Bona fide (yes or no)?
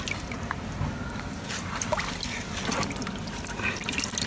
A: yes